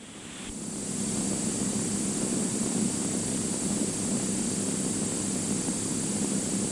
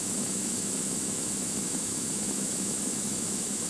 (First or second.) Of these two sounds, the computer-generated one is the second